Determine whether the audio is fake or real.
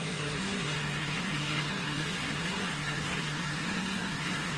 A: fake